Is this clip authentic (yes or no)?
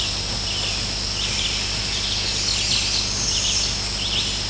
yes